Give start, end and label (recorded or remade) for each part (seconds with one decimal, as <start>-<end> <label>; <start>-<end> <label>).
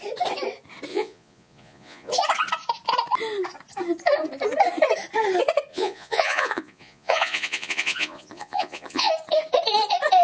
0.0-0.9 recorded; 0.9-2.1 remade; 2.1-5.7 recorded; 5.7-9.1 remade; 9.1-10.2 recorded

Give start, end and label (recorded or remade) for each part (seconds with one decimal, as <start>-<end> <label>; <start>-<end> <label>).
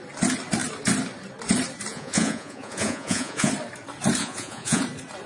0.0-1.9 recorded; 1.9-3.5 remade; 3.5-4.2 recorded; 4.2-4.8 remade; 4.8-5.3 recorded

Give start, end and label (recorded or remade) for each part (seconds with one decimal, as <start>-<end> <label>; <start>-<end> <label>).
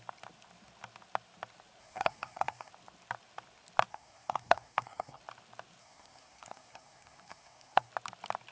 0.0-1.8 recorded; 1.8-2.7 remade; 2.7-3.9 recorded; 3.9-5.2 remade; 5.2-5.8 recorded; 5.8-7.9 remade; 7.9-8.5 recorded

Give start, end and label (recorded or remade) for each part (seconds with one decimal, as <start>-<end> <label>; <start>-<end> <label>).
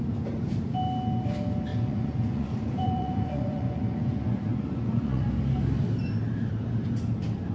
0.0-1.7 recorded; 1.7-5.2 remade; 5.2-7.5 recorded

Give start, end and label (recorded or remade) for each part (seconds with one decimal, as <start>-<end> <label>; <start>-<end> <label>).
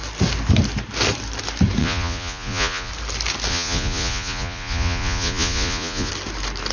0.0-1.8 recorded; 1.8-2.9 remade; 2.9-3.5 recorded; 3.5-6.1 remade; 6.1-6.7 recorded